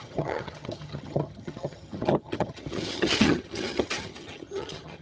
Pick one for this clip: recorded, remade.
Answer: remade